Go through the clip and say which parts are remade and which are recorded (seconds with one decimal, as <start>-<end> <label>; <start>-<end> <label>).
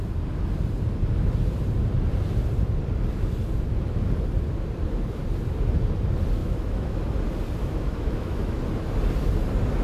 0.0-6.4 recorded; 6.4-7.0 remade; 7.0-7.6 recorded; 7.6-8.6 remade; 8.6-9.8 recorded